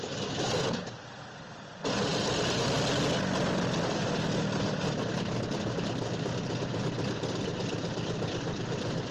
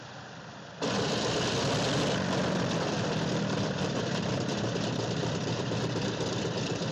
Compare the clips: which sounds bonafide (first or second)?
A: first